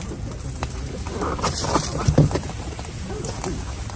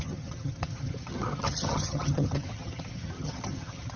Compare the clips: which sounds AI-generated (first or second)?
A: second